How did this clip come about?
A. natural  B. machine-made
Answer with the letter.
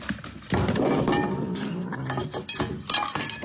A